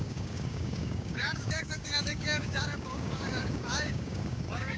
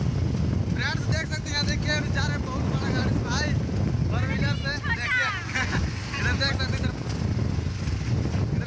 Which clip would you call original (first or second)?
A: second